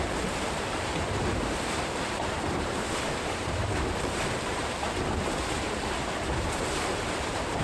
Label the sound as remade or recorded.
remade